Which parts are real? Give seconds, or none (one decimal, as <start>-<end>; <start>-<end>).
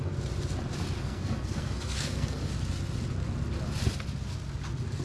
0.0-1.0; 2.5-5.0